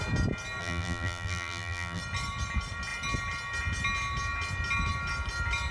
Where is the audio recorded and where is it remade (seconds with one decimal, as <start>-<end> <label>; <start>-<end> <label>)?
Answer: 0.0-0.6 recorded; 0.6-2.0 remade; 2.0-5.7 recorded